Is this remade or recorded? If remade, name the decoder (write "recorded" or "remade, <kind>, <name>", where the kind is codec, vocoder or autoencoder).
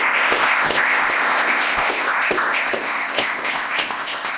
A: remade, codec, ZipCodec